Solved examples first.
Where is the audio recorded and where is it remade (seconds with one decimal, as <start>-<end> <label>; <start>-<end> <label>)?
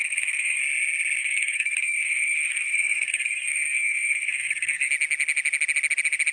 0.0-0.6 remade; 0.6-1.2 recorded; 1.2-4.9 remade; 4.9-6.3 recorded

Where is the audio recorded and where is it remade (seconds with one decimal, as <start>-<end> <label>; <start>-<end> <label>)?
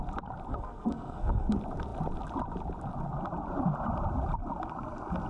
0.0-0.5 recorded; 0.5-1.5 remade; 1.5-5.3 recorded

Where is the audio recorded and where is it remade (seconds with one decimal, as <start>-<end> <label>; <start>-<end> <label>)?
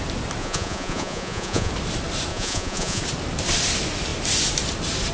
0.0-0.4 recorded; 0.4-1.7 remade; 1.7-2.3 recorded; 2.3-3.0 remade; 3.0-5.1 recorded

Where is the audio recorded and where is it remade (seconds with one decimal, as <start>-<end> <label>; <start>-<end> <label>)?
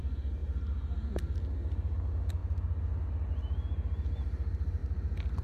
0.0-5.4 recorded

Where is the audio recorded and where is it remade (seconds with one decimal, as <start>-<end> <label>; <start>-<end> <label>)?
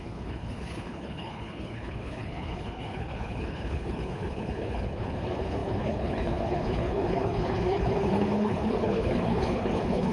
0.0-10.1 remade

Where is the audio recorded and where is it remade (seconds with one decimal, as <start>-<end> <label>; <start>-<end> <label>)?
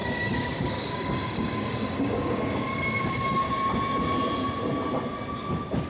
0.0-3.5 remade; 3.5-5.9 recorded